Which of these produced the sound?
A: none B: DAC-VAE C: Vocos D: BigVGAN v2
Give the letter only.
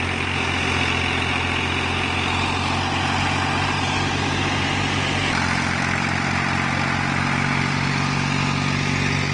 A